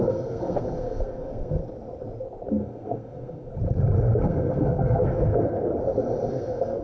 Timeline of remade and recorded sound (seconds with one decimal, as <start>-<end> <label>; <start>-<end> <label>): 0.0-1.6 remade; 1.6-2.5 recorded; 2.5-3.5 remade; 3.5-4.0 recorded; 4.0-5.7 remade; 5.7-6.3 recorded; 6.3-6.8 remade